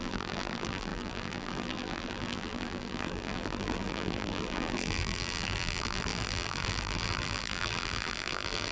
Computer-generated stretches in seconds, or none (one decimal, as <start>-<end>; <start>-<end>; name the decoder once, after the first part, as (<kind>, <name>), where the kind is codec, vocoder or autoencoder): 0.0-8.7 (vocoder, BigVGAN v2)